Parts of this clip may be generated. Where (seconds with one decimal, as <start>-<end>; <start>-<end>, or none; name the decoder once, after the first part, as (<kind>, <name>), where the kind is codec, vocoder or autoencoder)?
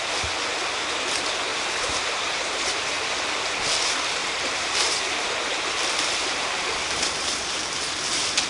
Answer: 1.5-3.0 (vocoder, BigVGAN v2); 4.2-5.6